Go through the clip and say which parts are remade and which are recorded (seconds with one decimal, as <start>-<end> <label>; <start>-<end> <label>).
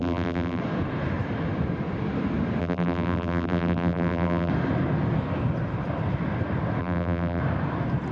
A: 0.0-0.6 remade; 0.6-2.6 recorded; 2.6-4.5 remade; 4.5-6.8 recorded; 6.8-7.4 remade; 7.4-8.1 recorded